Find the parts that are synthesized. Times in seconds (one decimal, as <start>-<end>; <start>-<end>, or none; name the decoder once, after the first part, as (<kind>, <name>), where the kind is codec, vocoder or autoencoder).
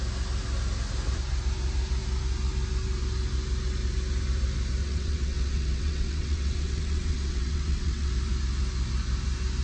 4.8-8.1 (vocoder, WaveNeXt)